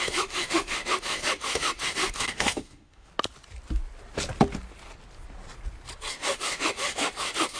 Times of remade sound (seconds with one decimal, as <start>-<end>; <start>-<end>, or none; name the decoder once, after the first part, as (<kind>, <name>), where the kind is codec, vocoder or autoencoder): 0.0-3.1 (autoencoder, DAC-VAE); 6.1-7.6

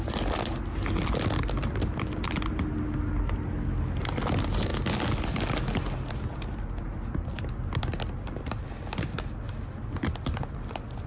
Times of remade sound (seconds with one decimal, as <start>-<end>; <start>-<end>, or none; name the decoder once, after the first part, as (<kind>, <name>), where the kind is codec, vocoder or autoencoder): none